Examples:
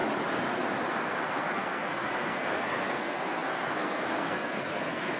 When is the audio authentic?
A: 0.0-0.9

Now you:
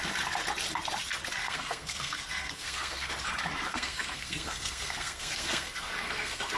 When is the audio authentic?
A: 0.0-1.4; 3.1-3.7

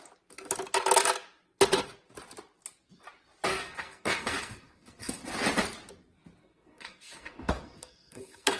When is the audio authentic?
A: 0.0-3.5; 5.2-6.4

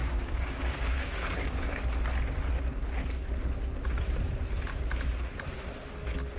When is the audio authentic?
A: 1.8-6.4